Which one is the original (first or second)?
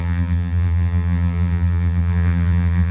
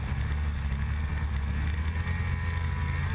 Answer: second